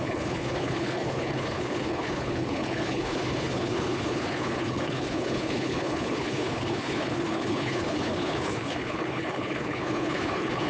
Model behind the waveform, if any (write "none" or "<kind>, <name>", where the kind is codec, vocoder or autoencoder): codec, HILCodec